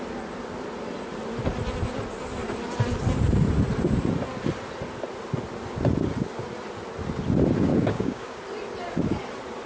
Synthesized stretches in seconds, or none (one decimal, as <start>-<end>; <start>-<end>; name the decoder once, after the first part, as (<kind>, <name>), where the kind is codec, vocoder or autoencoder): 7.7-8.4 (codec, DAC)